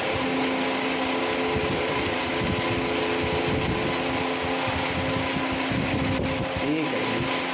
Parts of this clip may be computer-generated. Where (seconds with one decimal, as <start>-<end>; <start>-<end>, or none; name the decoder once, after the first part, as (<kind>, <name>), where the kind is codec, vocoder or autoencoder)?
1.6-2.3 (vocoder, BigVGAN v2)